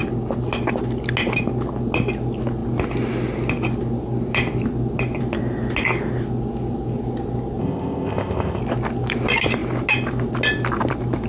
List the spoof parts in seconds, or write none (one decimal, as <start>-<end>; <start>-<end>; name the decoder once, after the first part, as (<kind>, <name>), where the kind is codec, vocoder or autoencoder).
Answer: 7.6-8.6 (codec, ZipCodec)